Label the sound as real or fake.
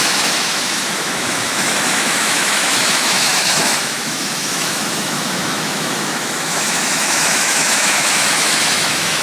fake